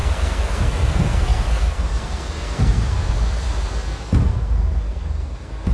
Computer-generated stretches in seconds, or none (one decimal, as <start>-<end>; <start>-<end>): 0.0-5.7